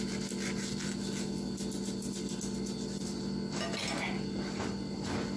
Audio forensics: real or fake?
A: real